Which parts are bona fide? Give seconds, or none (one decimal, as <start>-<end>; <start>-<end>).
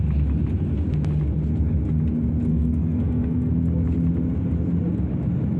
0.0-2.5; 3.5-5.6